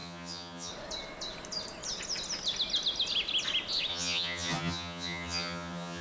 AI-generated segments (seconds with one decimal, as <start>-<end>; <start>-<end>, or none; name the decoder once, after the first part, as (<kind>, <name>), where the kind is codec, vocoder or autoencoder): 0.0-0.7 (vocoder, HiFi-GAN); 3.9-6.0